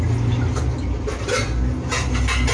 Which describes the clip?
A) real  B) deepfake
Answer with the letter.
A